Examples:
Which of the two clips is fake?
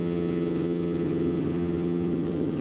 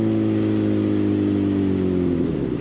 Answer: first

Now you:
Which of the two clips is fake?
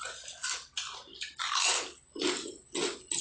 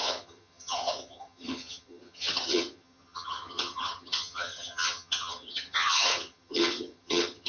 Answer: second